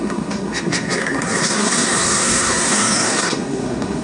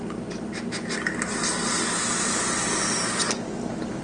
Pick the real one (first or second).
second